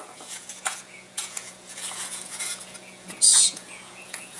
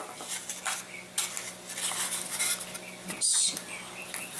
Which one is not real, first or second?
first